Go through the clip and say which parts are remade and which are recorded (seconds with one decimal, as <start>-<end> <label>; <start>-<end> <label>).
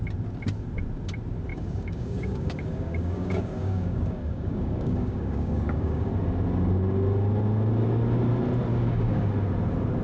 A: 0.0-1.5 recorded; 1.5-6.1 remade; 6.1-8.7 recorded; 8.7-9.3 remade; 9.3-10.0 recorded